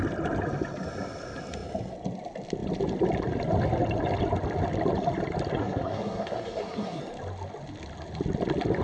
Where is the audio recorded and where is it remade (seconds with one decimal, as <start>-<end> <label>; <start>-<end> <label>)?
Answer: 0.0-5.6 recorded; 5.6-7.0 remade; 7.0-8.8 recorded

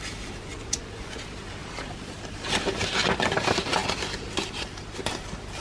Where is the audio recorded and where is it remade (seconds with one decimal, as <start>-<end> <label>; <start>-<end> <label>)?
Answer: 0.0-0.5 recorded; 0.5-1.2 remade; 1.2-5.6 recorded

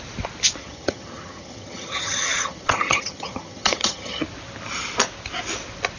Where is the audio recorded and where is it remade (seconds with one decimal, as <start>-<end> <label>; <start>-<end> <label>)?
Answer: 0.0-0.6 recorded; 0.6-4.2 remade; 4.2-6.0 recorded

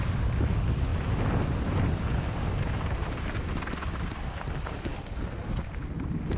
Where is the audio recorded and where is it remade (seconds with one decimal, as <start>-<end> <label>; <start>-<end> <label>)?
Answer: 0.0-6.4 recorded

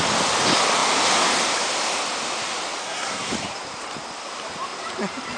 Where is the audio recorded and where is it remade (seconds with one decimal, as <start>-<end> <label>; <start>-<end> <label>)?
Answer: 0.0-2.8 recorded; 2.8-3.3 remade; 3.3-5.4 recorded

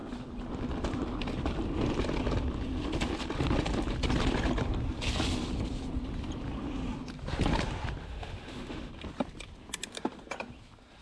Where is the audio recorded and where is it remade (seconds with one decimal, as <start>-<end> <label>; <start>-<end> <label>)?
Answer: 0.0-8.0 recorded; 8.0-8.9 remade; 8.9-11.0 recorded